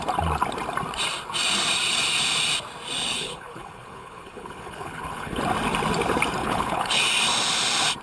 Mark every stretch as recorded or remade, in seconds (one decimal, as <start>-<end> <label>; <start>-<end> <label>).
0.0-3.1 recorded; 3.1-5.4 remade; 5.4-6.4 recorded; 6.4-7.0 remade; 7.0-8.0 recorded